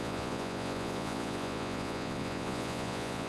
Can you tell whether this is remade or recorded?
remade